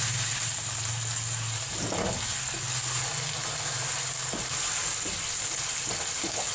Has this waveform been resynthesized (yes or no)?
no